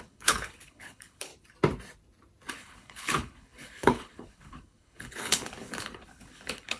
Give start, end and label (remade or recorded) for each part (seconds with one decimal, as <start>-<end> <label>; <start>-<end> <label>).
0.0-1.3 remade; 1.3-2.5 recorded; 2.5-6.8 remade